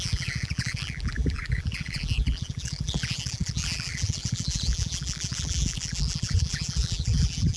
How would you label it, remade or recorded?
remade